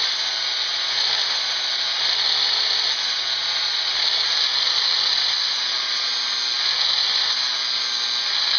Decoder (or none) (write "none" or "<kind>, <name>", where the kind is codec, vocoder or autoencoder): none